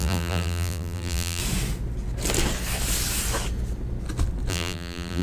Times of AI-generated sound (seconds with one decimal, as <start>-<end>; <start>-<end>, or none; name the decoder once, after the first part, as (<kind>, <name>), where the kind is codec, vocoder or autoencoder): 0.0-1.4 (vocoder, BigVGAN v2); 4.5-5.2